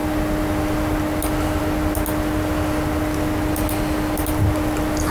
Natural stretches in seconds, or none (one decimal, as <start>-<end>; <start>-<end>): 0.0-5.1